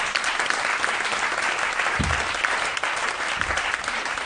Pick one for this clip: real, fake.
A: fake